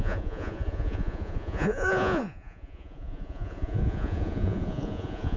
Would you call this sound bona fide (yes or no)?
no